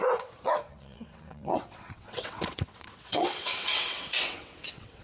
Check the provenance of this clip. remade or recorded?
remade